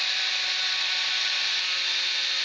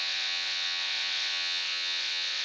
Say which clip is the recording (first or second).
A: first